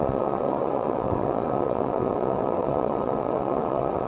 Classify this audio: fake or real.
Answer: fake